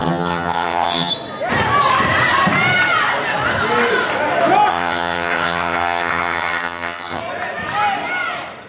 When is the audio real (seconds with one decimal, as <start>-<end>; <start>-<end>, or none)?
1.1-4.7; 7.2-8.7